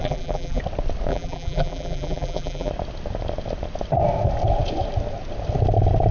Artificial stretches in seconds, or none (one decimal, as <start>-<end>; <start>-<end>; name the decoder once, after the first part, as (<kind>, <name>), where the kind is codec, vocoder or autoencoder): 0.0-0.6 (vocoder, BigVGAN v2); 1.1-2.7